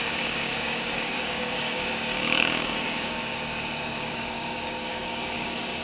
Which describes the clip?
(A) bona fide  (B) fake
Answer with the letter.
B